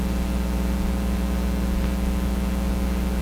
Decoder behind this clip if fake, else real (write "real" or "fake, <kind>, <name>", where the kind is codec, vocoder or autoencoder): real